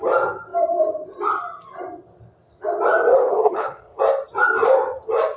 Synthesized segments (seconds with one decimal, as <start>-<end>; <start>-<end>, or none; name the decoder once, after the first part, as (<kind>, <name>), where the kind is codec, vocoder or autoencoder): 3.2-4.0 (codec, HILCodec)